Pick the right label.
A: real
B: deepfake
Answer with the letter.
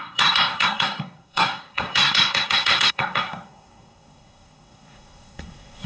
B